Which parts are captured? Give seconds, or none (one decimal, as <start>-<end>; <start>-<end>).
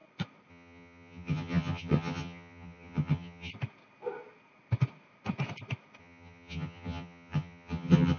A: 0.0-0.5; 3.5-6.0